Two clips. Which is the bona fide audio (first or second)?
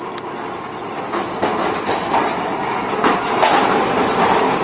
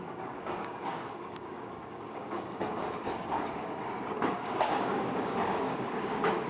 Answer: first